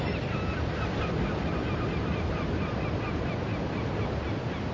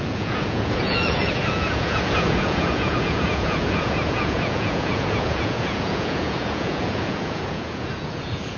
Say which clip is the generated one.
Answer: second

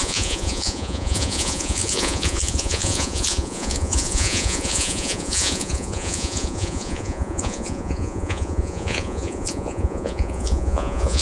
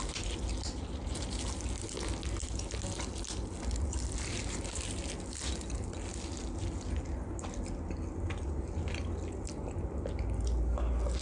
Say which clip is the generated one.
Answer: first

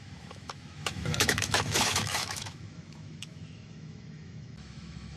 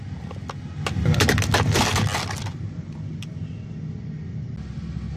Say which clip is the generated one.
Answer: first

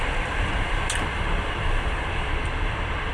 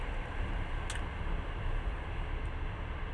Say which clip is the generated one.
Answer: first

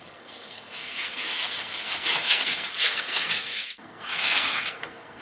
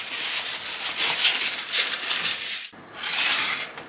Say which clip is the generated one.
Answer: first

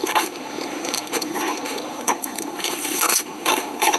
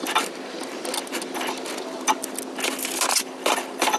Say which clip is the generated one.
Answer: first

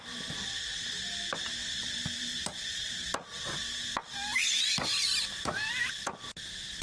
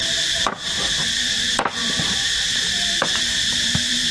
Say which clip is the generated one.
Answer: second